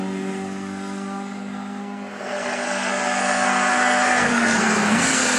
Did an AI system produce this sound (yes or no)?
yes